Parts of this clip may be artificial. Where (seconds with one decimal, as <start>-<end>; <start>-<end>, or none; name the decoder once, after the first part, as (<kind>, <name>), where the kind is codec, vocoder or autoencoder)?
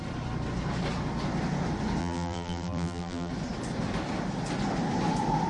2.0-3.3 (vocoder, BigVGAN v2)